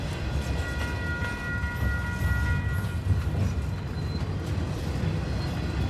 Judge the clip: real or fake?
real